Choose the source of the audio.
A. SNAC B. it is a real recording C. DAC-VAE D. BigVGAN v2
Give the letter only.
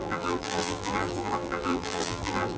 D